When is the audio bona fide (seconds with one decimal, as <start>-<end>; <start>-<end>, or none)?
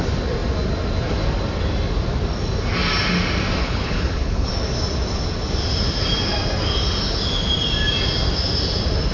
0.0-3.6; 4.5-9.1